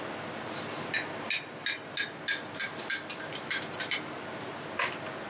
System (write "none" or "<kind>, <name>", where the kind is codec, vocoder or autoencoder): none